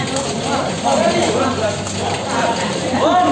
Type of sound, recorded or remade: recorded